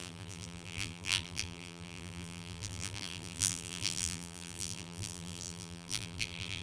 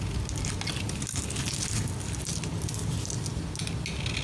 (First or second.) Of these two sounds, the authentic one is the second